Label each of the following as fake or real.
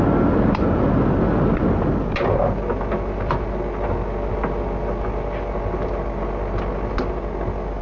real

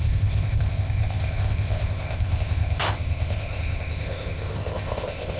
fake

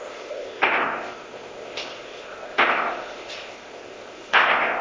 fake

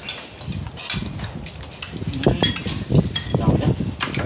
real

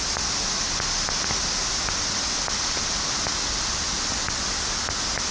real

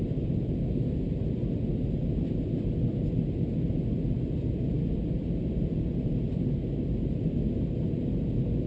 real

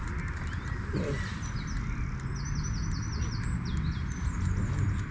real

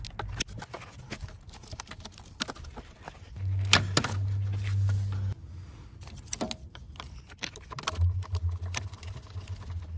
real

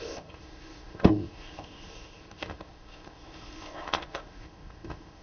fake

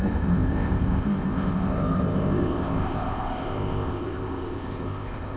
fake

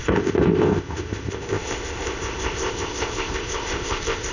fake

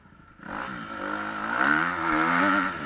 real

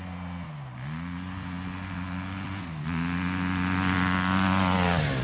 real